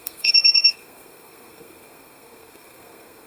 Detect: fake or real fake